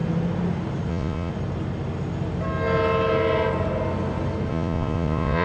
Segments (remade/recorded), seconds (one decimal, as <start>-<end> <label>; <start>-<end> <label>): 0.0-0.9 recorded; 0.9-1.3 remade; 1.3-4.5 recorded; 4.5-5.4 remade